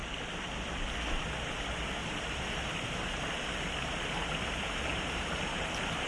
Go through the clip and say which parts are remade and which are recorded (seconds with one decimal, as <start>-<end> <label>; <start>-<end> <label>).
0.0-2.0 recorded; 2.0-3.7 remade; 3.7-4.9 recorded; 4.9-6.1 remade